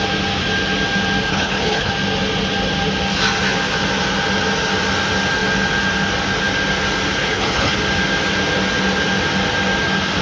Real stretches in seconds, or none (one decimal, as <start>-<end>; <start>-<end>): 0.0-1.3; 1.9-7.2; 7.8-10.2